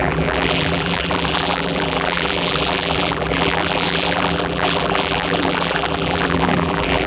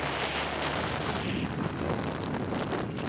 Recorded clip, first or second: second